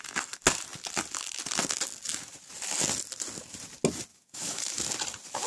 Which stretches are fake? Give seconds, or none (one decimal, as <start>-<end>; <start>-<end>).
4.1-4.8